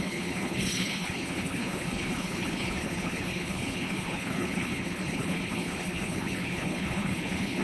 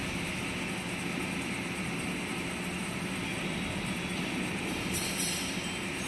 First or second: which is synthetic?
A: first